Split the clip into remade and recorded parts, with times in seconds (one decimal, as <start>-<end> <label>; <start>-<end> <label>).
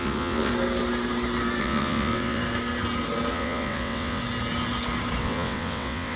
0.0-0.5 remade; 0.5-1.6 recorded; 1.6-2.4 remade; 2.4-3.3 recorded; 3.3-4.2 remade; 4.2-5.2 recorded; 5.2-6.2 remade